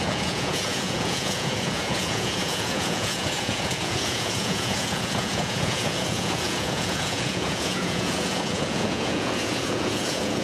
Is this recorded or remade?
remade